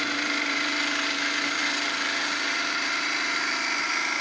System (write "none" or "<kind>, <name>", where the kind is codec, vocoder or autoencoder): vocoder, BigVGAN v2